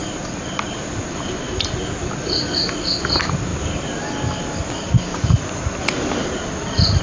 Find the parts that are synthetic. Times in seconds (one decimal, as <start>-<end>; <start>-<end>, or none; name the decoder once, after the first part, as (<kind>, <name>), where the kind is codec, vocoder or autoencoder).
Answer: 5.1-5.6 (vocoder, Vocos)